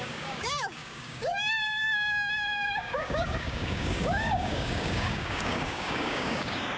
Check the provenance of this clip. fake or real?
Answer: fake